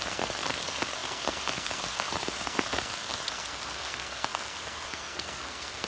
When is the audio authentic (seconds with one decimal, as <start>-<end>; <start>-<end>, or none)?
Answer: none